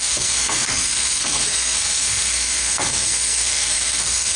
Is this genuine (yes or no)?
no